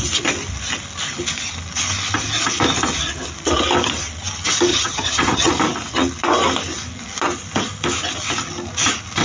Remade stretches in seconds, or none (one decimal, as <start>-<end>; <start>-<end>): 4.7-5.5